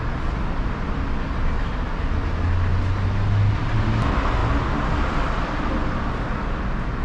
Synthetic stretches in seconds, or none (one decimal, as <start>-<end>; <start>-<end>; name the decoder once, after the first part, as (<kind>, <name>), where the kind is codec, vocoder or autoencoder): none